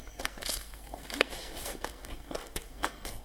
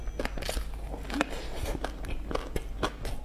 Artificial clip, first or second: first